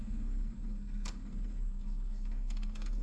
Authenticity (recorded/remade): remade